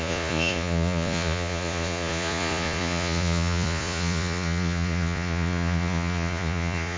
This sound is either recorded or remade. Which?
remade